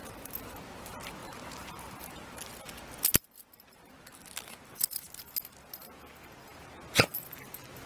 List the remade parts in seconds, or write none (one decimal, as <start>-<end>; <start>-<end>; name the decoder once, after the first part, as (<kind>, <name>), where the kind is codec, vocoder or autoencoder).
none